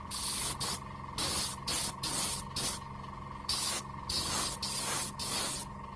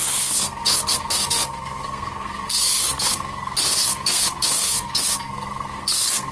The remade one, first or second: second